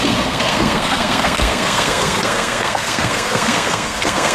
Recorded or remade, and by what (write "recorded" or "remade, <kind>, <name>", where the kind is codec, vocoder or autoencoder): remade, codec, SNAC